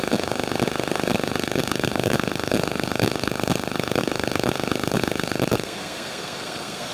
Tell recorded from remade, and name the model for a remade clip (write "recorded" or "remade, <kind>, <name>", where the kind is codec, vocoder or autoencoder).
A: remade, codec, SNAC